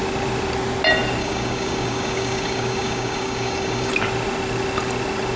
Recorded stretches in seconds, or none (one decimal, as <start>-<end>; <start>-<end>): 0.0-1.2; 3.9-5.4